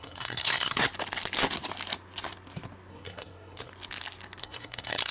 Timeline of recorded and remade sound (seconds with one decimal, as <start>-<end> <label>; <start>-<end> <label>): 0.0-0.9 remade; 0.9-2.9 recorded; 2.9-3.7 remade; 3.7-4.4 recorded; 4.4-5.1 remade